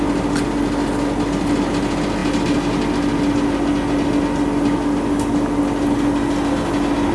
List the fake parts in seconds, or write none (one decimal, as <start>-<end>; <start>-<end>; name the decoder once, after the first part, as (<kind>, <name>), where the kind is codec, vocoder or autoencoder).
none